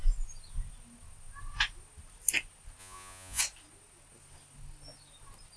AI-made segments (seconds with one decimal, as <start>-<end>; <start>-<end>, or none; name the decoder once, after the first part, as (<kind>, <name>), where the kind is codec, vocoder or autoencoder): 2.8-3.4 (vocoder, Vocos)